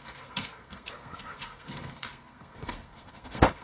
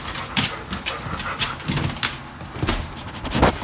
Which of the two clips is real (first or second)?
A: second